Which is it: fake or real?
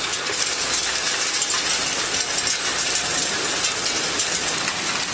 real